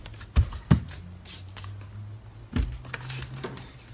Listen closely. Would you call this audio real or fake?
real